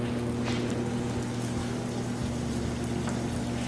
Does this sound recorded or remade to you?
recorded